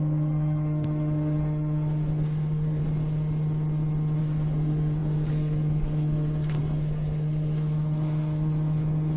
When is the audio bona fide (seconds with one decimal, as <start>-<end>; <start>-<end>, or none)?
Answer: 2.8-4.2